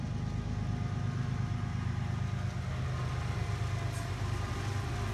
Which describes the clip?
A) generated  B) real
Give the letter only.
B